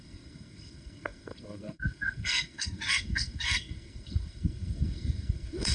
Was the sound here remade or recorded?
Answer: remade